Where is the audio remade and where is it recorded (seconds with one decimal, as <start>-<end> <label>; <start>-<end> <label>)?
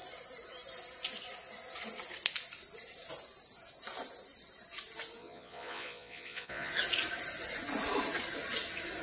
0.0-5.2 recorded; 5.2-6.7 remade; 6.7-9.0 recorded